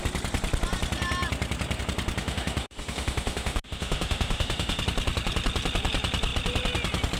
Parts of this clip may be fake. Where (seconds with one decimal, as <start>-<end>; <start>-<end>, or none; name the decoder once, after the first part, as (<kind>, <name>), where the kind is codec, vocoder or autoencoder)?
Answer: 2.2-4.8 (autoencoder, DAC-VAE)